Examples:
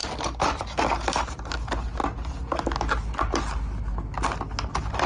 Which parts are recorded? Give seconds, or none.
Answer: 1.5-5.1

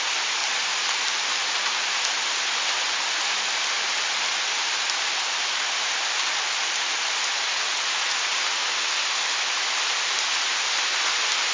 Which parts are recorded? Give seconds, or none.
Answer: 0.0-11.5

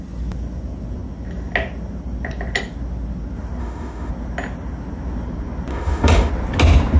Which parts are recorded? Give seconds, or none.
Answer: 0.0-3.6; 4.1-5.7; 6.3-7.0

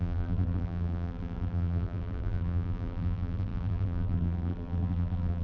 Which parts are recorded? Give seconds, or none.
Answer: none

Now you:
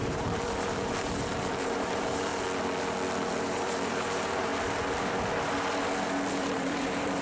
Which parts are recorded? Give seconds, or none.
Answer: 2.3-3.4; 4.5-6.3

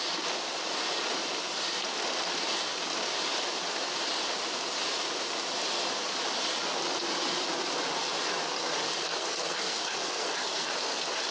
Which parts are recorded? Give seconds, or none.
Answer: 0.0-9.0; 10.7-11.3

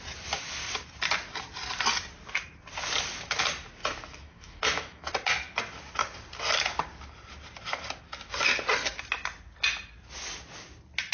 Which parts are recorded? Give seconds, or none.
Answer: 0.0-3.8; 5.1-11.1